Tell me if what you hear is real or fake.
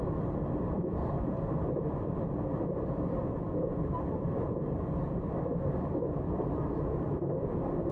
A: fake